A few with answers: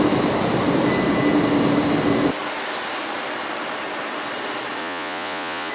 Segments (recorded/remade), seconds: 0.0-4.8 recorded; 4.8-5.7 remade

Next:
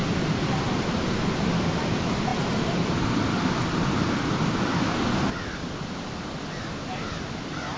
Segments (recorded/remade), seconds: 0.0-7.8 recorded

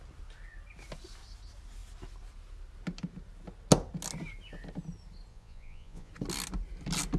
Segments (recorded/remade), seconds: 0.0-5.3 recorded; 5.3-6.1 remade; 6.1-7.2 recorded